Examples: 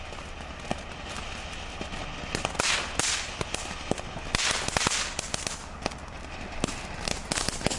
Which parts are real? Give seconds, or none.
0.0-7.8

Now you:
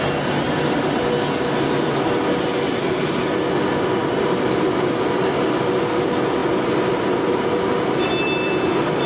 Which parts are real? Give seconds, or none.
0.0-9.1

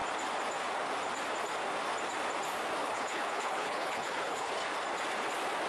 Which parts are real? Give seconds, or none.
0.0-2.8; 4.5-5.7

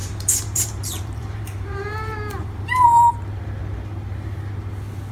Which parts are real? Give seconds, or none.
3.1-5.1